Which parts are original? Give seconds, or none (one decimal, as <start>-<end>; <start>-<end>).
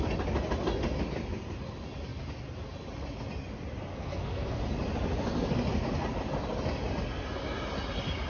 0.0-3.9; 4.6-8.3